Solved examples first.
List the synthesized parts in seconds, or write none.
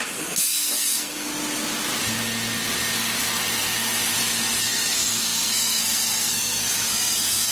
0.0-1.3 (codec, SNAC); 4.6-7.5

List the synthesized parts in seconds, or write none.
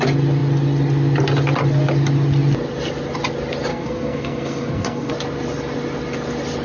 3.7-5.1 (codec, SNAC)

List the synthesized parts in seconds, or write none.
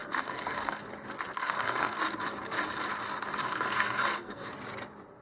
0.0-0.8 (codec, SNAC); 1.4-2.0; 3.4-4.5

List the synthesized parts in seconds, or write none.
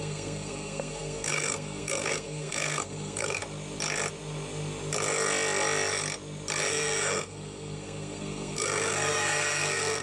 0.0-3.4 (codec, SNAC); 6.7-10.0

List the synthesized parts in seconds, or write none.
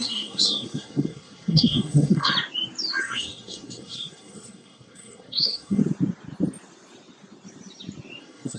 0.0-2.3 (codec, SNAC); 3.0-5.8; 8.2-8.6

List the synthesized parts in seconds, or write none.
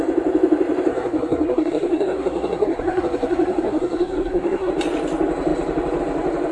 0.9-4.7 (codec, SNAC)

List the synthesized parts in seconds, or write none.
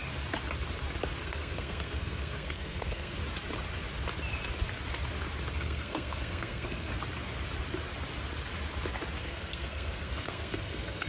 1.2-3.2 (codec, SNAC); 5.5-6.9; 9.2-11.1